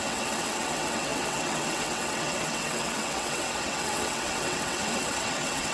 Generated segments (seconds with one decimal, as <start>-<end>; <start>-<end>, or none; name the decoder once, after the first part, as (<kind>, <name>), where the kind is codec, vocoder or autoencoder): 0.0-5.7 (vocoder, WaveNeXt)